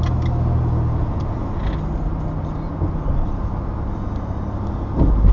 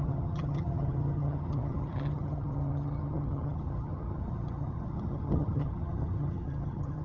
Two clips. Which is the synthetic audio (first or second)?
second